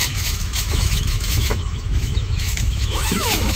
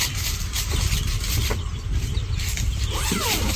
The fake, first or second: first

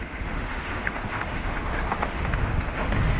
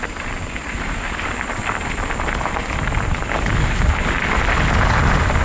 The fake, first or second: first